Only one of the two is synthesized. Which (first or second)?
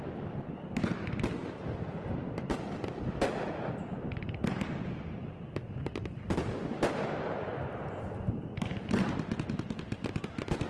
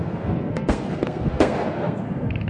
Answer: second